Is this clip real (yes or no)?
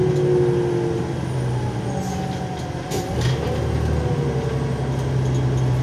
yes